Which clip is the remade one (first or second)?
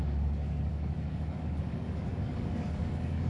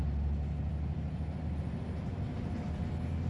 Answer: first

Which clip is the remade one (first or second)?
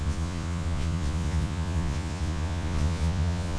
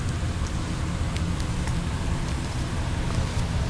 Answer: first